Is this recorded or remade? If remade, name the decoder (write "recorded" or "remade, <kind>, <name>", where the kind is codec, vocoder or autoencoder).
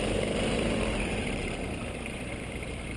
remade, vocoder, BigVGAN v2